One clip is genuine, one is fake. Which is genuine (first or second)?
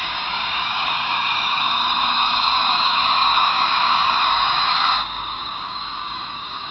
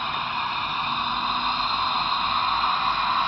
second